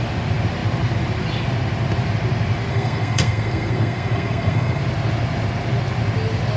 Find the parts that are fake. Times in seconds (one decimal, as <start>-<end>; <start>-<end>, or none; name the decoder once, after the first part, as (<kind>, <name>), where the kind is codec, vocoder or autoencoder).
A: 2.7-4.8 (codec, SNAC)